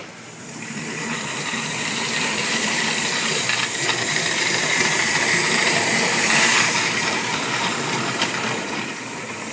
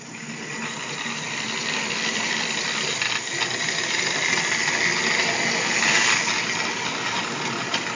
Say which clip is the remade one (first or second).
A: first